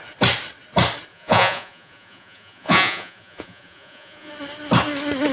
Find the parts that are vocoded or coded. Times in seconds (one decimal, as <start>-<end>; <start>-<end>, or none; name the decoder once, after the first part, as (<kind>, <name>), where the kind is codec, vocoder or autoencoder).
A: 1.1-4.3 (vocoder, Vocos)